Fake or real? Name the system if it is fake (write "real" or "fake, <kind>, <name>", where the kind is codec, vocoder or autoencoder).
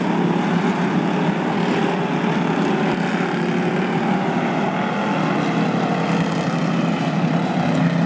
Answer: real